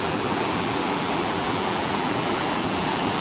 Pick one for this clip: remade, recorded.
remade